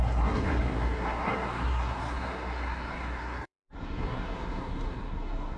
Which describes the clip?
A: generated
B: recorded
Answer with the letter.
A